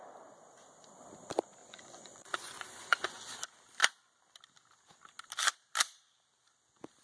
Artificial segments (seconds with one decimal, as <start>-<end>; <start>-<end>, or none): 1.6-3.2